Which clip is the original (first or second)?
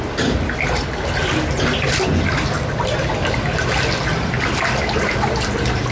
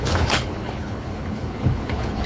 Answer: first